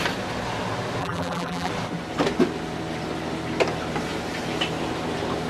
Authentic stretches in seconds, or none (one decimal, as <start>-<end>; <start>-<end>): 0.0-1.0; 1.7-5.5